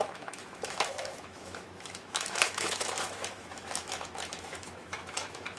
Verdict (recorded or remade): remade